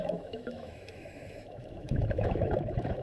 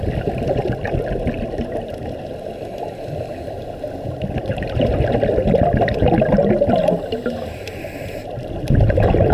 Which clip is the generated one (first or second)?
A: first